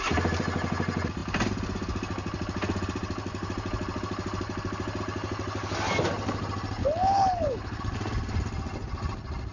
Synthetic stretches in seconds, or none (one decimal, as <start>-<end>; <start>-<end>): 6.8-7.8